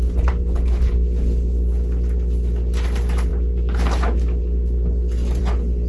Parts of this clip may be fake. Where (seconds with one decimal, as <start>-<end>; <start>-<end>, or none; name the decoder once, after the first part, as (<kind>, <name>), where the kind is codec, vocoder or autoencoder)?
none